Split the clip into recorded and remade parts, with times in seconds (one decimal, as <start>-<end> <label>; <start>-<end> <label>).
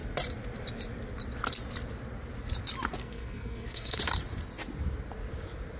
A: 0.0-3.0 recorded; 3.0-4.0 remade; 4.0-5.8 recorded